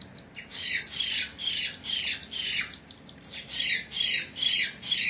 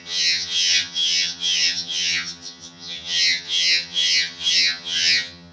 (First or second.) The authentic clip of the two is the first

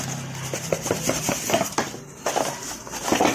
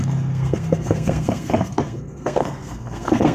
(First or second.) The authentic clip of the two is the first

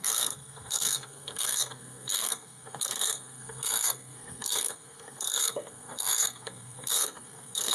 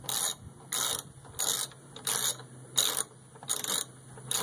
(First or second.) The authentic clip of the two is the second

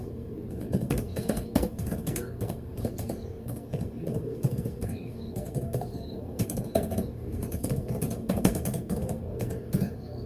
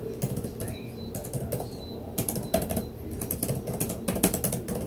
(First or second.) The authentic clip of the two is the second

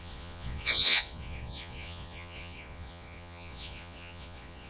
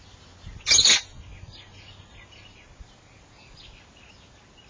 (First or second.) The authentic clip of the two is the second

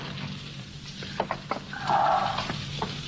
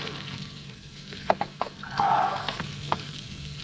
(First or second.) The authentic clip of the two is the first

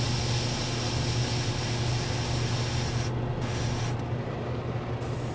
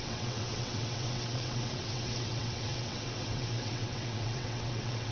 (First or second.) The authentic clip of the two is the first